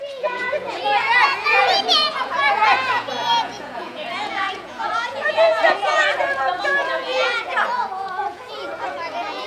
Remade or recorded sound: remade